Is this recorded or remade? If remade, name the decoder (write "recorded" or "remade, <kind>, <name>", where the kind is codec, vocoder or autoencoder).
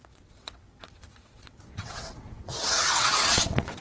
remade, vocoder, WaveNeXt